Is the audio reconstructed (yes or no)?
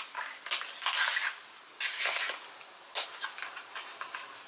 no